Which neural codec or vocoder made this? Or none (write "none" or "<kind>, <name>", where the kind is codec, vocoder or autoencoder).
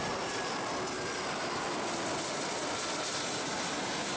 none